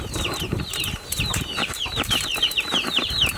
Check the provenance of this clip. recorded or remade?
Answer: remade